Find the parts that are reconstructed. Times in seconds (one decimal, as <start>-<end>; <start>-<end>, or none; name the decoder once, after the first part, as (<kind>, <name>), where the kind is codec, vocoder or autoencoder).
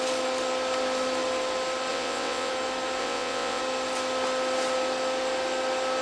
1.9-2.5 (vocoder, WaveNeXt); 3.0-3.6